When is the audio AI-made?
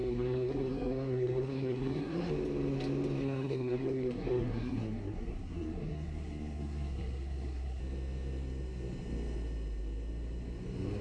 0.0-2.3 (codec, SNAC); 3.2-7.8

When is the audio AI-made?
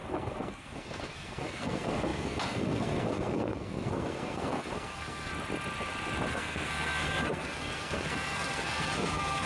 0.0-5.3 (codec, SNAC); 6.3-9.5